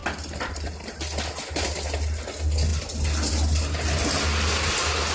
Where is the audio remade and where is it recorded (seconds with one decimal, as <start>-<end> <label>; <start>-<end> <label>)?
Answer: 0.0-5.1 recorded